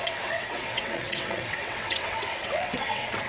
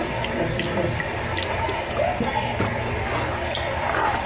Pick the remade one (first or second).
first